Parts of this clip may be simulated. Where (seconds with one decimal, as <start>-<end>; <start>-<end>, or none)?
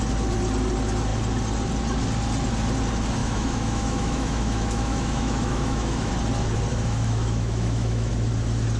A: 3.2-6.1; 6.7-8.1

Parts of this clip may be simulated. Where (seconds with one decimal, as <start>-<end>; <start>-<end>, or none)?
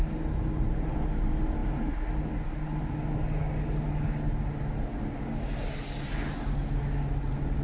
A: none